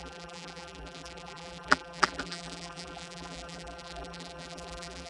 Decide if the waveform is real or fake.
fake